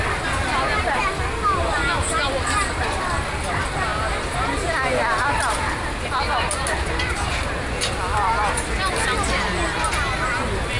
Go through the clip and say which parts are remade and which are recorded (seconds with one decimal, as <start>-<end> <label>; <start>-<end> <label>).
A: 0.0-10.8 recorded